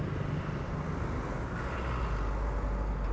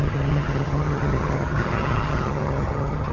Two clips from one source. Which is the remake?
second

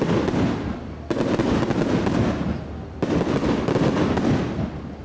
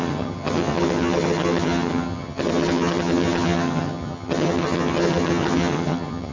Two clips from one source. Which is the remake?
second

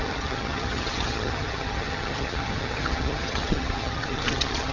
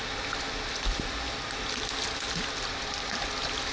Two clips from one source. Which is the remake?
first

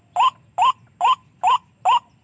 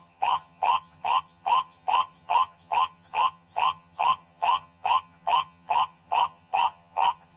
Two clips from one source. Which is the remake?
second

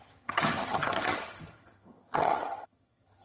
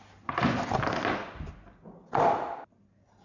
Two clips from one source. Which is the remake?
first